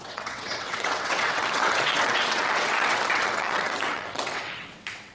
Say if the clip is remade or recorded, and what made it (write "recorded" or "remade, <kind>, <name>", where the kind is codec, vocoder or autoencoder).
remade, vocoder, WaveNeXt